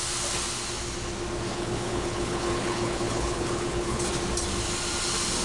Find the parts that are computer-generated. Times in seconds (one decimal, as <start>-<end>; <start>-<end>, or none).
1.5-4.1